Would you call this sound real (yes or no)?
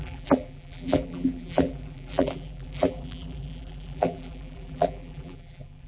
no